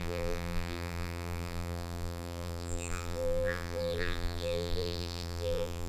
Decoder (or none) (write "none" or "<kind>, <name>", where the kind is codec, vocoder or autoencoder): vocoder, BigVGAN v2